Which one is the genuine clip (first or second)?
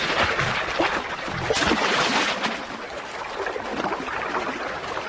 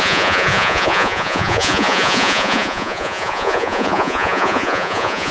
first